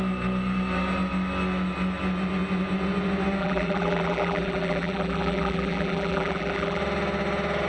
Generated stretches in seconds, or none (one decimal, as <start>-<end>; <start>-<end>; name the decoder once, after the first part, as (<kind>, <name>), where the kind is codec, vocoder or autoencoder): 3.4-6.8 (vocoder, BigVGAN v2)